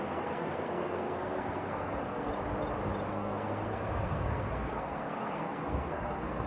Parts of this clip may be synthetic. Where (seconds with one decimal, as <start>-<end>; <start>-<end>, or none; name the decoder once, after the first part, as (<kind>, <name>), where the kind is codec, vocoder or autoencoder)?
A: 0.0-2.3 (codec, SNAC); 3.1-6.5